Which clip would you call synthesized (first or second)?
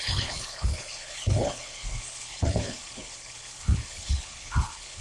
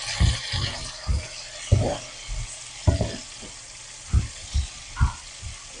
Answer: first